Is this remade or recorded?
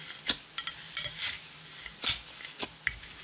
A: recorded